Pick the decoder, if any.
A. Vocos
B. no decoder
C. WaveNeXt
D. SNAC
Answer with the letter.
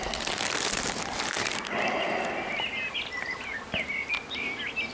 B